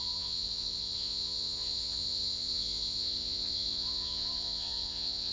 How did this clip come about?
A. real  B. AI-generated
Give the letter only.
B